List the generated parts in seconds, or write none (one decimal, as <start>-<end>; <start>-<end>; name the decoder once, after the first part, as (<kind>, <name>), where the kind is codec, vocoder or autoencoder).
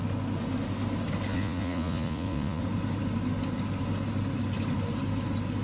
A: 1.3-2.6 (vocoder, Vocos)